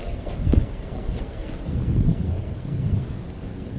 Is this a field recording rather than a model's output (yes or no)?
no